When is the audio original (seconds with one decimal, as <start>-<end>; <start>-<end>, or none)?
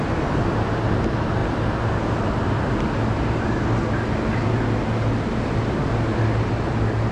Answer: 0.0-7.1